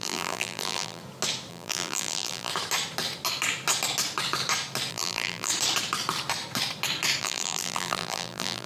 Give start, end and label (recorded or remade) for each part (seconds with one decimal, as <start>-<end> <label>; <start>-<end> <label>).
0.0-1.0 remade; 1.0-1.5 recorded; 1.5-2.5 remade; 2.5-4.9 recorded; 4.9-5.5 remade; 5.5-7.2 recorded; 7.2-8.7 remade